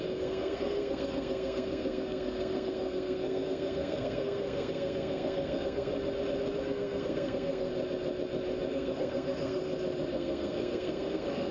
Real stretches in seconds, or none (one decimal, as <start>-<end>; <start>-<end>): 5.9-6.6; 7.7-8.7; 9.6-10.1